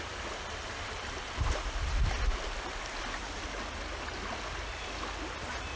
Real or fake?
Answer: real